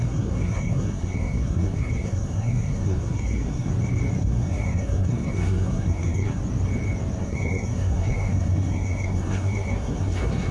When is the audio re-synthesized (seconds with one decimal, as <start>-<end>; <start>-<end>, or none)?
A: 0.0-3.7; 4.2-6.4; 7.2-10.5